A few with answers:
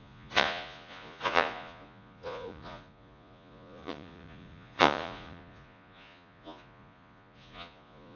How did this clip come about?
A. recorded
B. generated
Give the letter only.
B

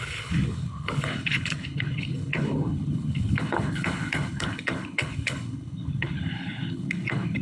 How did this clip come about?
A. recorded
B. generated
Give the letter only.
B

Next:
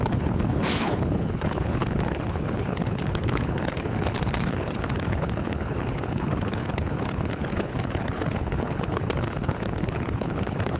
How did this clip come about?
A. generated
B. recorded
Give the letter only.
A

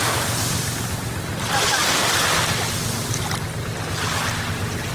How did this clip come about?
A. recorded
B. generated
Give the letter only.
A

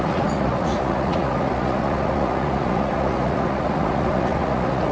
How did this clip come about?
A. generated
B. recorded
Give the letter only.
A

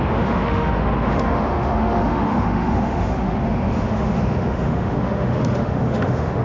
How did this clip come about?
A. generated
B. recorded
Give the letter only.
A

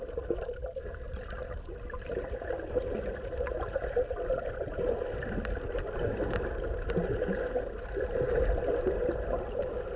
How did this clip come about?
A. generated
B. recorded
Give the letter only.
B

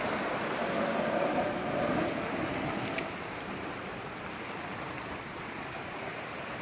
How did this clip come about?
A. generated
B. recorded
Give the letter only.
B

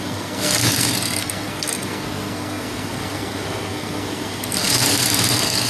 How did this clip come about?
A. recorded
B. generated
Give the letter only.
B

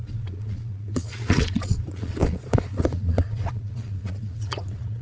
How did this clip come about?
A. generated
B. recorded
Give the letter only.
A